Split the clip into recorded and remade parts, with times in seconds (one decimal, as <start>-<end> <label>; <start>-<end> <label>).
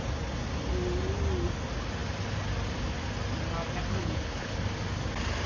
0.0-3.9 recorded; 3.9-4.6 remade; 4.6-5.5 recorded